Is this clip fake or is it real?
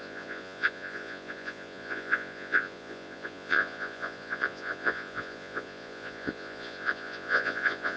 fake